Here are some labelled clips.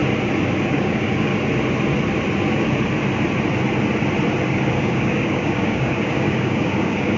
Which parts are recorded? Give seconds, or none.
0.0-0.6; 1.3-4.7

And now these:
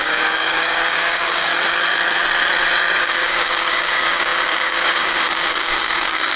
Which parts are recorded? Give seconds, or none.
1.5-3.0

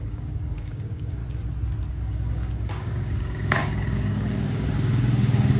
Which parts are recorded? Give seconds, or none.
1.2-1.9

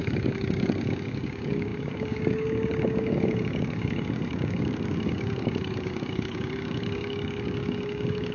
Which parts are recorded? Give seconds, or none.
none

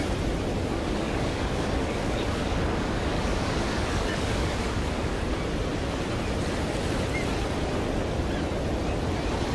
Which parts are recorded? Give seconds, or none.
0.0-0.6; 5.2-9.5

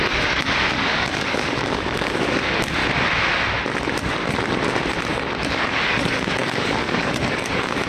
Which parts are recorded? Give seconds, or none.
2.8-5.5